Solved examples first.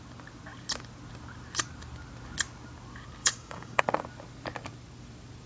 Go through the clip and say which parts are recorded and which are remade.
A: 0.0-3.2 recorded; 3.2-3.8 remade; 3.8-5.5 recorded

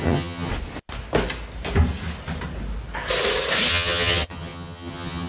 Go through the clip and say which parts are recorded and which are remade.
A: 0.0-0.5 remade; 0.5-3.7 recorded; 3.7-5.3 remade